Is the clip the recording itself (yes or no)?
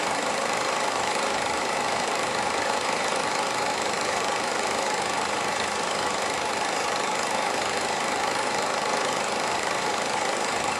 no